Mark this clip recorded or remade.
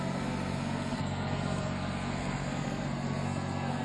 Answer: remade